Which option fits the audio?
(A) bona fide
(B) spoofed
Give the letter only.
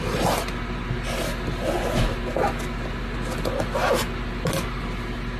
A